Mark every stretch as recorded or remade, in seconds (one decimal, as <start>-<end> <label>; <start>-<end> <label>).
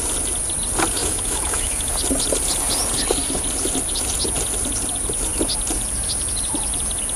0.0-1.0 recorded; 1.0-1.9 remade; 1.9-7.2 recorded